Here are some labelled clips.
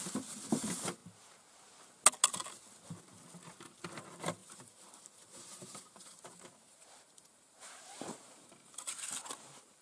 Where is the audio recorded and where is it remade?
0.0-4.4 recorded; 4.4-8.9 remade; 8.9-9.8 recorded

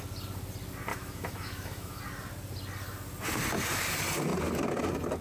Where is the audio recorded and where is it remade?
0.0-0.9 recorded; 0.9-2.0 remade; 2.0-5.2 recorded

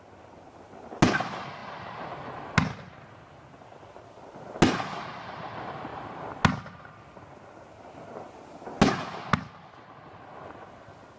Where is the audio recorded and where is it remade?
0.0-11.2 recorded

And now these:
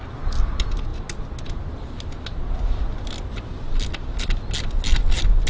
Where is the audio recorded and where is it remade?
0.0-5.5 recorded

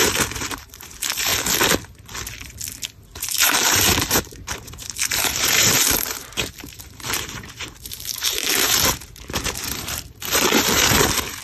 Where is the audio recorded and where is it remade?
0.0-1.3 remade; 1.3-3.3 recorded; 3.3-11.4 remade

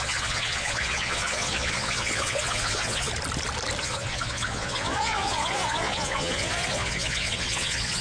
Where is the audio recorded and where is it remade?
0.0-3.1 remade; 3.1-3.8 recorded; 3.8-8.0 remade